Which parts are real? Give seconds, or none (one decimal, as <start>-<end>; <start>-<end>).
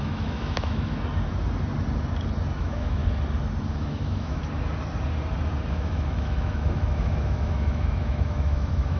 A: 0.9-2.6; 3.0-3.7; 4.4-5.7